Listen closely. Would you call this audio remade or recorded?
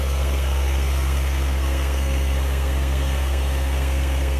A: remade